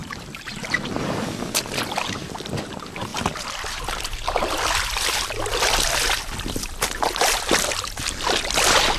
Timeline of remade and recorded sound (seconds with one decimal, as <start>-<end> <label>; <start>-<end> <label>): 0.0-1.0 remade; 1.0-9.0 recorded